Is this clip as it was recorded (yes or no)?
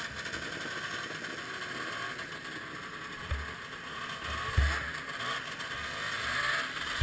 yes